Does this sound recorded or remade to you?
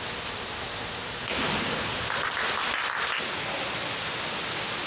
recorded